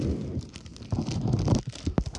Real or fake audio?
real